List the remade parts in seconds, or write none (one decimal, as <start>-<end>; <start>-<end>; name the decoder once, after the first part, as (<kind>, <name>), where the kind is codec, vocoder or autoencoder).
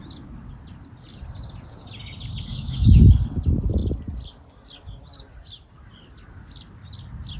2.5-3.0 (autoencoder, DAC-VAE)